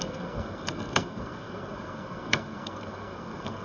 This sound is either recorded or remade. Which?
remade